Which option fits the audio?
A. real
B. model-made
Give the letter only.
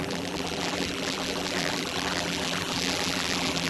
B